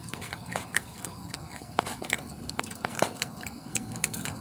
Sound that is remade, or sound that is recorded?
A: remade